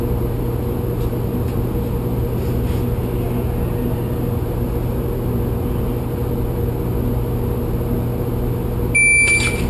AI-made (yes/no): no